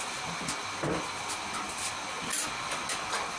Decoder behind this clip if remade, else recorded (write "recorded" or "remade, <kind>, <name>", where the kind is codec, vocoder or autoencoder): recorded